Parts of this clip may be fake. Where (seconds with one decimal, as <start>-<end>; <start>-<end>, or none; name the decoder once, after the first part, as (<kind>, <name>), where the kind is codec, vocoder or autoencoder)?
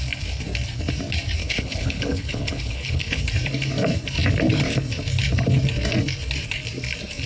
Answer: 1.4-3.2 (codec, HILCodec)